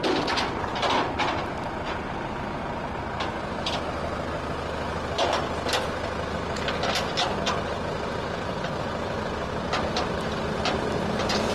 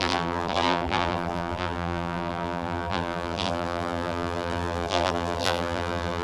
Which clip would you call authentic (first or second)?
first